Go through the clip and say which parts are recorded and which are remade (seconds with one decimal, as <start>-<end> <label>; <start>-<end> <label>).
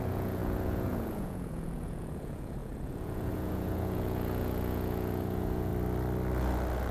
0.0-5.7 remade; 5.7-6.9 recorded